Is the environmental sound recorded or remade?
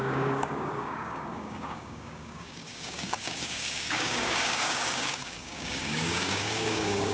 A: remade